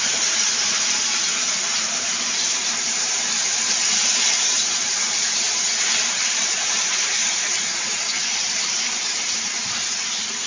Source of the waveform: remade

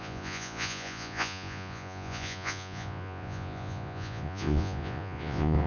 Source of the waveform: remade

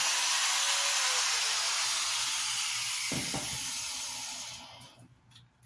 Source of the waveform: recorded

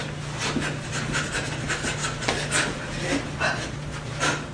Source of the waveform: recorded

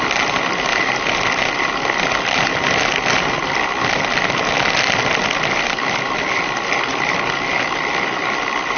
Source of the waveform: recorded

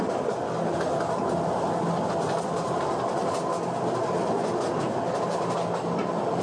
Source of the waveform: recorded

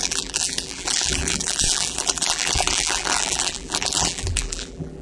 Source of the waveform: remade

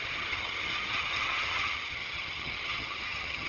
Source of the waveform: remade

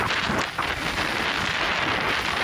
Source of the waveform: recorded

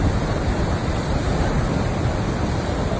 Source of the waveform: recorded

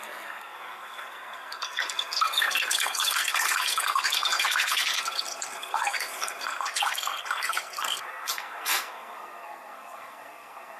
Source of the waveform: remade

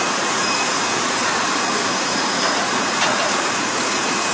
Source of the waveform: remade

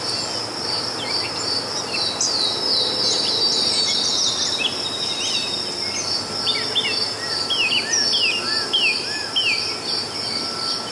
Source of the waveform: recorded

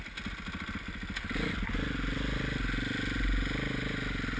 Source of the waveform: recorded